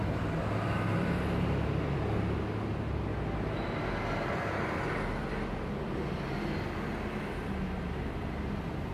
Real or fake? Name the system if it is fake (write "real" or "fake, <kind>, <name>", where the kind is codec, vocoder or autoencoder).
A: real